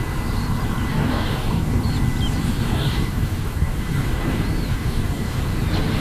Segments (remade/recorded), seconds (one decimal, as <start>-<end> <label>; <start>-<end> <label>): 0.0-0.9 recorded; 0.9-1.8 remade; 1.8-2.5 recorded; 2.5-4.2 remade; 4.2-4.7 recorded; 4.7-5.4 remade; 5.4-6.0 recorded